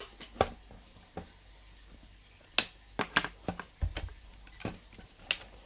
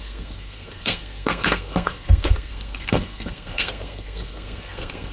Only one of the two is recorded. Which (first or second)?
first